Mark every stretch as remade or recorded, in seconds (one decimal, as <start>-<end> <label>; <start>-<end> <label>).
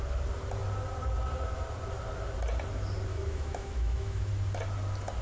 0.0-3.1 recorded; 3.1-4.3 remade; 4.3-5.2 recorded